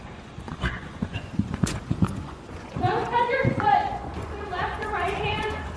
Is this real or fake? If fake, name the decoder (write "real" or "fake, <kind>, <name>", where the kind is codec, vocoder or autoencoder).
fake, vocoder, Vocos